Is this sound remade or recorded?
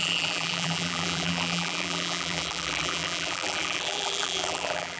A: remade